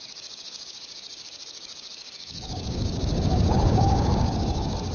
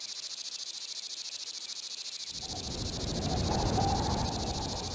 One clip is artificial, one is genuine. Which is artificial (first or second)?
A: first